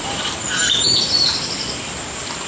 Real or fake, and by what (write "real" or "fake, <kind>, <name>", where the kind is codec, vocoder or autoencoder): real